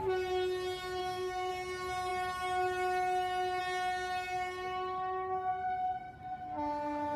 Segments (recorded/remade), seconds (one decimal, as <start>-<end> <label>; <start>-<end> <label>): 0.0-1.0 recorded; 1.0-1.5 remade; 1.5-7.2 recorded